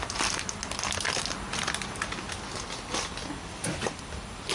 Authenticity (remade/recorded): recorded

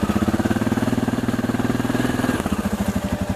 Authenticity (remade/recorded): recorded